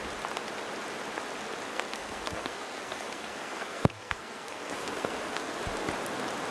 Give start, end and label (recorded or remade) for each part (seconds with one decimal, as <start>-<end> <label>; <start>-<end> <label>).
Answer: 0.0-1.7 recorded; 1.7-5.6 remade; 5.6-6.5 recorded